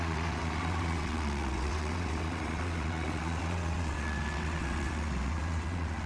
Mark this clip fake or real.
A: fake